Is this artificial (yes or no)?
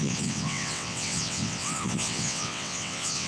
yes